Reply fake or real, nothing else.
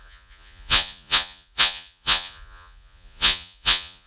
fake